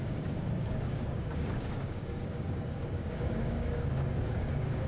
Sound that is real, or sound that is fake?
fake